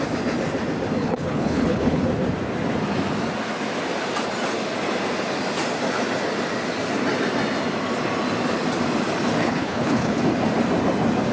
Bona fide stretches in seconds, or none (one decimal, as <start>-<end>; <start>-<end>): 0.0-1.0; 2.0-9.4; 10.2-11.3